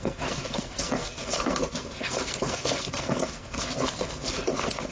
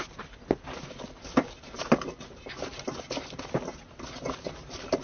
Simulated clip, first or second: first